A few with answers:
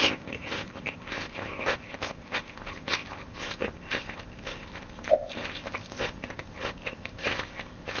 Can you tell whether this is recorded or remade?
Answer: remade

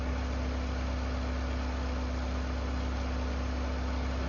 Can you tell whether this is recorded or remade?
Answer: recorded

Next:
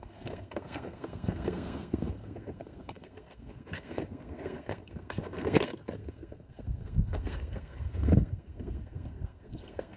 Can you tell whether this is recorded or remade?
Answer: remade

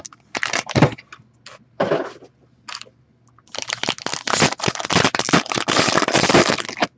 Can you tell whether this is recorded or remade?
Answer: recorded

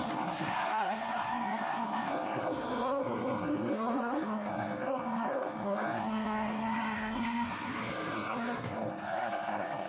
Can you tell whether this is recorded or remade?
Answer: remade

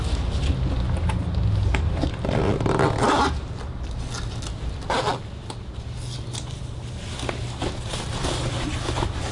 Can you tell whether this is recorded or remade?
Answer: recorded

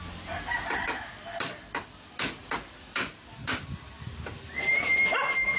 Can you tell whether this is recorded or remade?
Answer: recorded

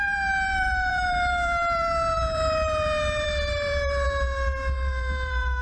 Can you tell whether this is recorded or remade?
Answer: remade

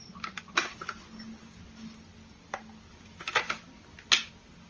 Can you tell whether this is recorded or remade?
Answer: recorded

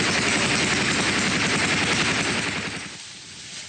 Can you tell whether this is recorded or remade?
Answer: recorded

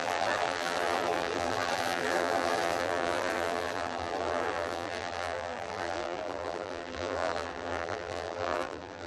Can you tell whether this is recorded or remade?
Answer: remade